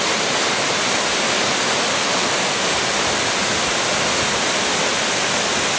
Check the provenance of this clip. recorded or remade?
recorded